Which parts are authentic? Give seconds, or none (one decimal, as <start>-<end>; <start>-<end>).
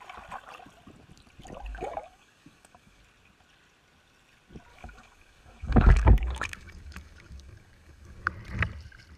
0.0-1.7; 3.0-4.7; 8.3-9.2